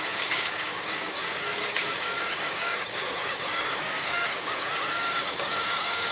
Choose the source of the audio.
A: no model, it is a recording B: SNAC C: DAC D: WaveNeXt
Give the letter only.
C